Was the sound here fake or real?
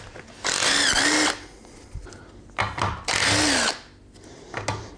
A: real